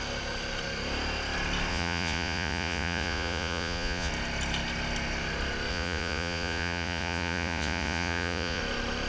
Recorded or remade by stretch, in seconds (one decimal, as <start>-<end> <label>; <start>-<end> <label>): 0.0-1.7 recorded; 1.7-4.1 remade; 4.1-5.7 recorded; 5.7-8.6 remade; 8.6-9.1 recorded